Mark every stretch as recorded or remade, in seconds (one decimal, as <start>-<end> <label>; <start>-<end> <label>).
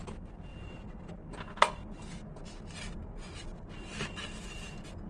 0.0-0.5 recorded; 0.5-1.1 remade; 1.1-5.1 recorded